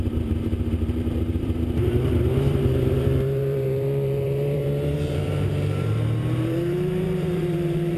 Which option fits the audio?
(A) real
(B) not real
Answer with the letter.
B